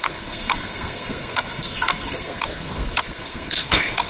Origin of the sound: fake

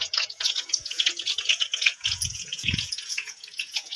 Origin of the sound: fake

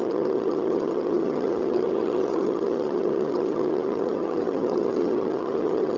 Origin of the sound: fake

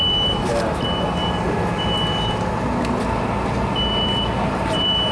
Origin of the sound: real